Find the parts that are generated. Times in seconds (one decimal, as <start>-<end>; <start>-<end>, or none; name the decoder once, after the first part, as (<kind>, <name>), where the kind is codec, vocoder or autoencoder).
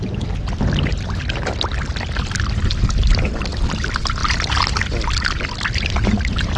4.2-5.4 (vocoder, BigVGAN v2)